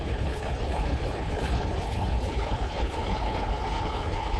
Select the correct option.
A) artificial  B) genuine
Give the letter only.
A